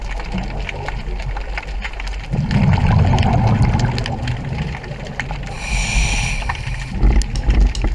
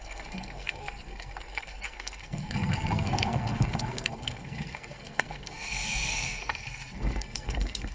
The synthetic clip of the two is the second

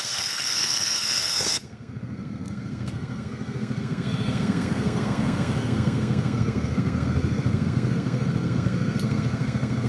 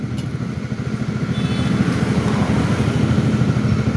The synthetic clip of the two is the first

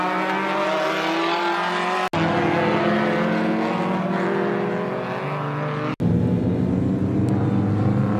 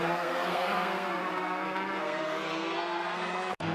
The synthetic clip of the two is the second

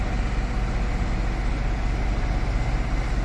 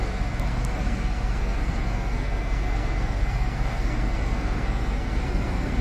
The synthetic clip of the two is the second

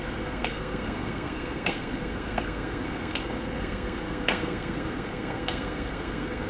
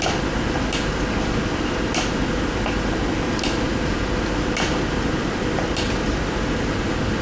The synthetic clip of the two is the first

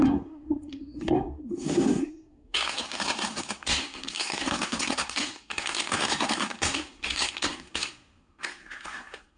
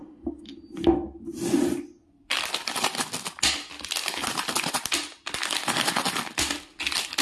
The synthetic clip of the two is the first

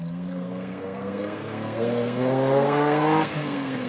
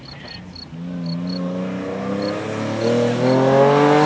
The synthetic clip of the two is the first